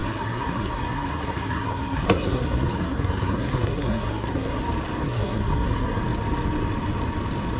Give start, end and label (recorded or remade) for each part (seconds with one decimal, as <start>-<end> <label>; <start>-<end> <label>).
0.0-4.6 remade; 4.6-5.0 recorded; 5.0-6.0 remade; 6.0-7.6 recorded